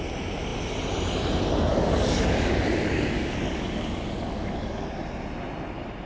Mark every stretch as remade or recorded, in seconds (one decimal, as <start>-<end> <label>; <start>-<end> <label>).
0.0-1.7 recorded; 1.7-5.0 remade; 5.0-6.1 recorded